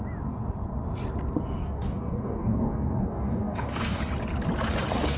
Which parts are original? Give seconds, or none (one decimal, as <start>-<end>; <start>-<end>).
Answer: 0.0-1.6; 4.0-5.2